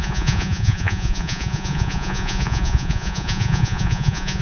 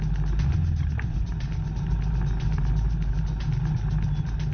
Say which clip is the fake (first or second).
first